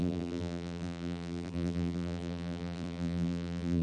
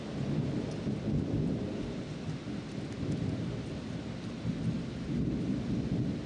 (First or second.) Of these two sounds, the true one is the second